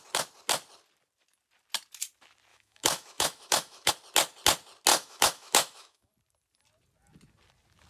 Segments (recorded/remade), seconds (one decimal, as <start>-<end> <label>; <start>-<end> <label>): 0.0-2.5 recorded; 2.5-3.9 remade; 3.9-4.9 recorded; 4.9-6.1 remade; 6.1-7.9 recorded